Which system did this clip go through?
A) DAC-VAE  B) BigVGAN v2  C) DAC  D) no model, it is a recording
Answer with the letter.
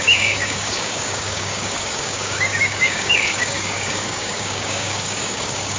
C